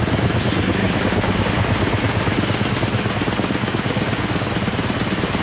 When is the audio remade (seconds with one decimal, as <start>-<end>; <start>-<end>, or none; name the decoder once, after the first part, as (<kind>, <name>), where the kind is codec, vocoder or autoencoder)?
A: 0.8-1.5 (codec, DAC); 3.6-4.5